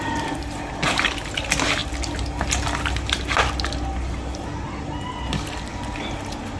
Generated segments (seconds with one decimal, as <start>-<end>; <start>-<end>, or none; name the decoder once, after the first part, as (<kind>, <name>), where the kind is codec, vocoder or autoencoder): none

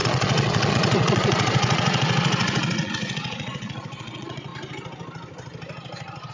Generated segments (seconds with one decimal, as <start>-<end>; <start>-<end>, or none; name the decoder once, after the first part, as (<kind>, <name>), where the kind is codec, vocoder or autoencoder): 0.0-4.5 (vocoder, Vocos)

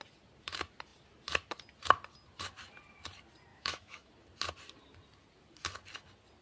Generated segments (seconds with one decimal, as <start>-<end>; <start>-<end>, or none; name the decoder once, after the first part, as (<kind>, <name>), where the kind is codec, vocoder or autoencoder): 3.5-4.1 (autoencoder, DAC-VAE)

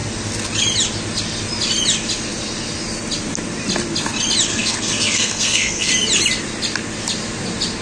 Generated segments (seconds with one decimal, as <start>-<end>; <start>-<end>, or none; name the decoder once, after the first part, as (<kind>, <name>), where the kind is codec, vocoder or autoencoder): 4.5-5.9 (codec, SNAC)

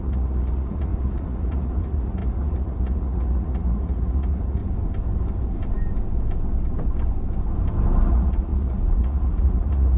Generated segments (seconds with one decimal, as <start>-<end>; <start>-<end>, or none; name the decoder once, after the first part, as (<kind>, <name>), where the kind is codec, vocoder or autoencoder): 0.0-4.6 (vocoder, Vocos); 8.1-10.0

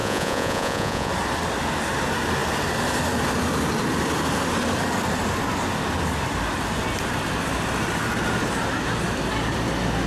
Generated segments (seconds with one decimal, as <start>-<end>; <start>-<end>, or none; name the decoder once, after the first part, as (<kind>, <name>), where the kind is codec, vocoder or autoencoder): 0.0-1.1 (vocoder, Vocos)

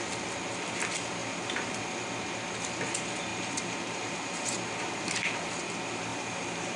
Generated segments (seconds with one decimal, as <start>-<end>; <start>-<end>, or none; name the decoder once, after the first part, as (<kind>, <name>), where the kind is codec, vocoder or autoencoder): 1.2-1.8 (vocoder, BigVGAN v2); 3.3-5.5; 6.1-6.8